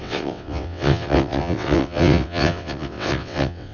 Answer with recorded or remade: remade